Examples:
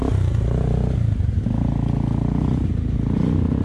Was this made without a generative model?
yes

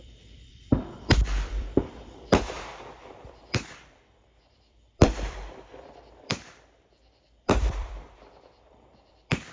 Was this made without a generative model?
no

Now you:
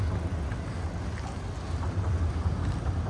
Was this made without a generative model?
yes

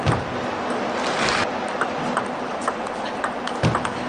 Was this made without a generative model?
yes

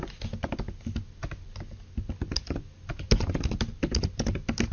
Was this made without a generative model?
yes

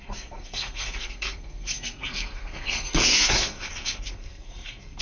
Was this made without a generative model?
no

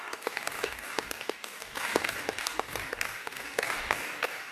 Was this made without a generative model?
no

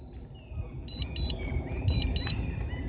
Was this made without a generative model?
yes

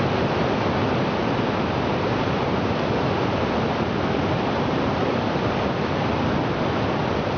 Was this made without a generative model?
yes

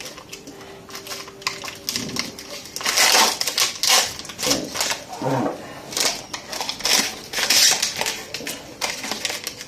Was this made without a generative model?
yes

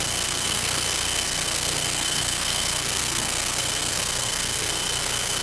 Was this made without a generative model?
no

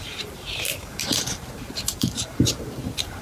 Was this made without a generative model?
no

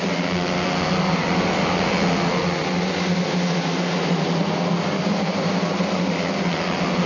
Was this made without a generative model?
yes